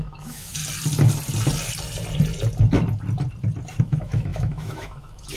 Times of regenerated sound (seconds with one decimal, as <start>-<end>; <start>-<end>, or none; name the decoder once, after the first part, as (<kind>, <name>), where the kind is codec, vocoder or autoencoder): 0.0-0.6 (autoencoder, DAC-VAE); 3.8-5.4